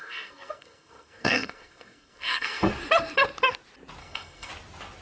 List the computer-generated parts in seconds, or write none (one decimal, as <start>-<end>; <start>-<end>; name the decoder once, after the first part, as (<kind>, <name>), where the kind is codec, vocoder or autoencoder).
0.0-2.7 (codec, SNAC); 4.0-4.5

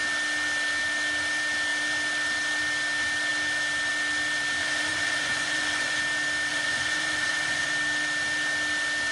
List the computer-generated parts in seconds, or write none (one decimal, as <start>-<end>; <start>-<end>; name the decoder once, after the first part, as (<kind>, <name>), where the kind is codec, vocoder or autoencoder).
4.6-6.0 (vocoder, Vocos); 6.5-7.7

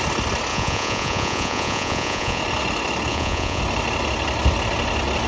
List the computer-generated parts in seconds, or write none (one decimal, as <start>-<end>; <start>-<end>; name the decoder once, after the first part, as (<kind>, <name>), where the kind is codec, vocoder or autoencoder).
0.5-2.4 (vocoder, Vocos); 3.1-3.6

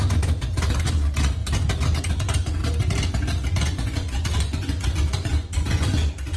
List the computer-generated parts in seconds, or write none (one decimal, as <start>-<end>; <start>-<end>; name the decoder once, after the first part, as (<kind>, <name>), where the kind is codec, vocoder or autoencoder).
0.0-1.4 (vocoder, Vocos); 2.0-2.6; 3.6-6.4

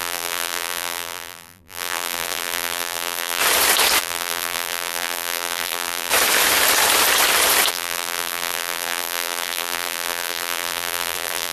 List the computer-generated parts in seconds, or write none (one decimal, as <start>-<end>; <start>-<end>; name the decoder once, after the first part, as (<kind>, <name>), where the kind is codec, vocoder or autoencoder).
0.0-3.4 (vocoder, BigVGAN v2); 4.0-6.1; 7.7-11.5